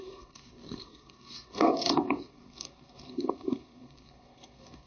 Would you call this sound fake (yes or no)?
yes